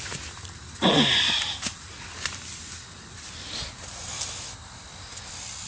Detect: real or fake real